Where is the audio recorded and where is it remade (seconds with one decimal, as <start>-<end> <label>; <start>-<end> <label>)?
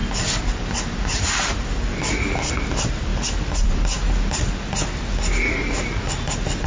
0.0-6.7 recorded